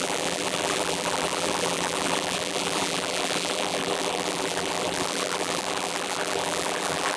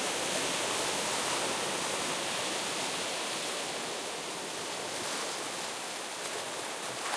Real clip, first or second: second